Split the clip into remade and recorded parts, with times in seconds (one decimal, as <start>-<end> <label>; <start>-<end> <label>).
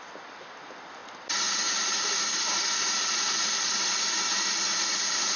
0.0-5.4 recorded